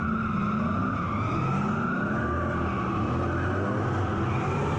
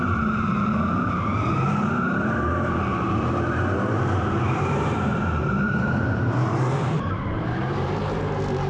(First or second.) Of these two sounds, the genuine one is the first